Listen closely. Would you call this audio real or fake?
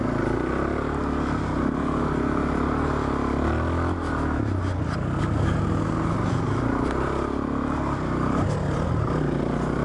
real